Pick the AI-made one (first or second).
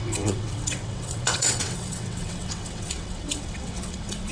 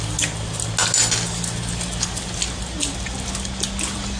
first